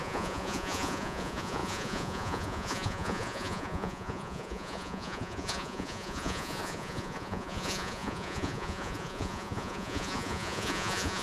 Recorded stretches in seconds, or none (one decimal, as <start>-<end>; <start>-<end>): none